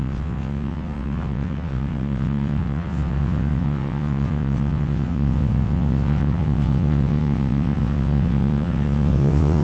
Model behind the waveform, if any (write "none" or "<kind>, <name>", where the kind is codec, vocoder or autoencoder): vocoder, WaveNeXt